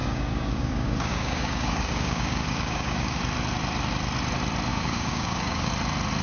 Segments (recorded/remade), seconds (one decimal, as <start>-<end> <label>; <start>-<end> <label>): 0.0-3.2 remade; 3.2-4.7 recorded; 4.7-5.7 remade; 5.7-6.2 recorded